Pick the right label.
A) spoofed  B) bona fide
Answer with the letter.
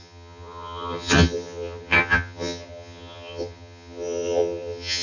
A